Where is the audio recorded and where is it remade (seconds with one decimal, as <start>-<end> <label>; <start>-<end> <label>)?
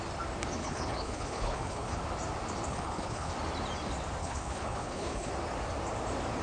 0.0-0.6 recorded; 0.6-2.0 remade; 2.0-2.7 recorded; 2.7-3.3 remade; 3.3-4.2 recorded; 4.2-5.3 remade; 5.3-6.4 recorded